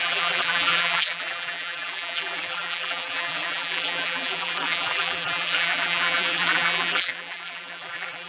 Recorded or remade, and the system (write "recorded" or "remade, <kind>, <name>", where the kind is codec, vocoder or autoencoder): remade, vocoder, BigVGAN v2